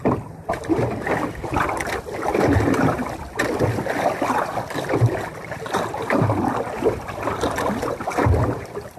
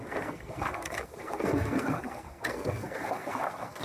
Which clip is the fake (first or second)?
second